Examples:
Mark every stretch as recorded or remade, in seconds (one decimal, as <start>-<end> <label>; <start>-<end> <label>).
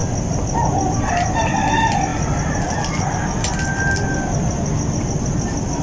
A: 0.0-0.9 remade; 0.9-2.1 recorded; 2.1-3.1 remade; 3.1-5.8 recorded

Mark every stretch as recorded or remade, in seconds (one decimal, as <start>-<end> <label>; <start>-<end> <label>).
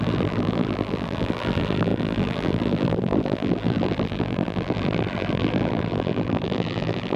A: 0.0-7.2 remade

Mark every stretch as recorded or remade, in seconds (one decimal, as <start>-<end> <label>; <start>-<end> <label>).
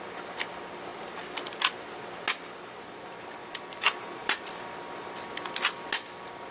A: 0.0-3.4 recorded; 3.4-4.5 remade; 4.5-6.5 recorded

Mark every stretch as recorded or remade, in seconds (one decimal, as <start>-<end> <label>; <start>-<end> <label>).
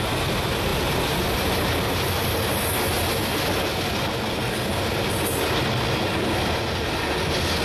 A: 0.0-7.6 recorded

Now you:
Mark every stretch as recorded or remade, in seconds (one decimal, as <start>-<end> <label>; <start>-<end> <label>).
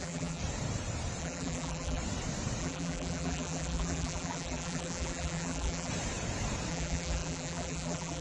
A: 0.0-0.4 remade; 0.4-1.2 recorded; 1.2-2.0 remade; 2.0-2.6 recorded; 2.6-5.9 remade; 5.9-6.7 recorded; 6.7-8.2 remade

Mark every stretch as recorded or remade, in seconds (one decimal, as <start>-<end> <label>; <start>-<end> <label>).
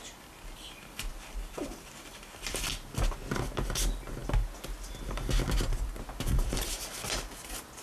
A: 0.0-1.1 recorded; 1.1-2.7 remade; 2.7-7.8 recorded